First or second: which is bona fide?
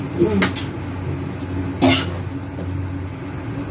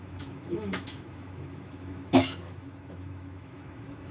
first